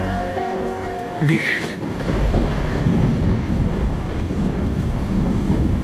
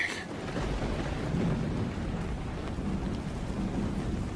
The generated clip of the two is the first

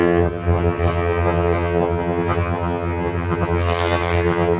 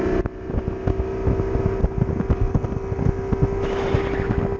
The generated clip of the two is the first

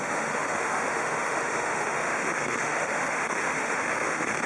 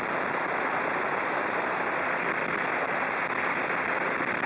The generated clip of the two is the first